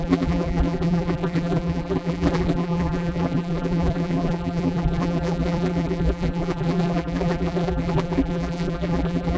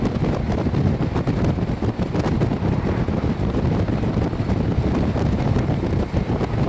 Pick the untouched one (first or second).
second